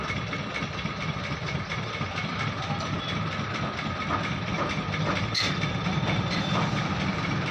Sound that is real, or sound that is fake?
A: real